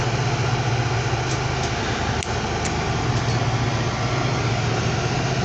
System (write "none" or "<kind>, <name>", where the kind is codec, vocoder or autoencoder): none